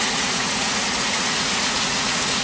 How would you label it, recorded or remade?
remade